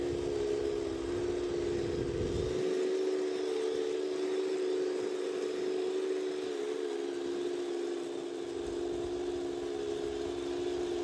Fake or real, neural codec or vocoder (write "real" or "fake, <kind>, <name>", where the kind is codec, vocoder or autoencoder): real